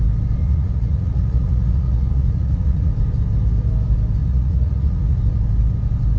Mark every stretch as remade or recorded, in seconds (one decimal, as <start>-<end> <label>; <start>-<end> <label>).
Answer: 0.0-0.4 recorded; 0.4-2.9 remade; 2.9-4.2 recorded; 4.2-5.2 remade; 5.2-6.2 recorded